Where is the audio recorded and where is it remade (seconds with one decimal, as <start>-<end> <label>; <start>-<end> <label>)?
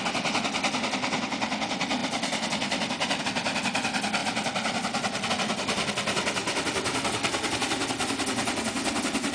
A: 0.0-6.4 recorded; 6.4-7.6 remade; 7.6-9.3 recorded